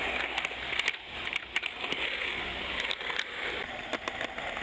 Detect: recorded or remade recorded